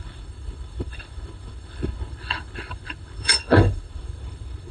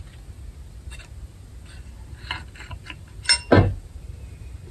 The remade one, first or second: first